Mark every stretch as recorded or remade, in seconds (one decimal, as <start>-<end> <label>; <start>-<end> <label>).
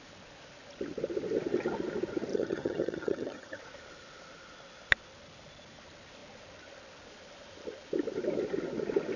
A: 0.0-2.3 recorded; 2.3-3.6 remade; 3.6-9.2 recorded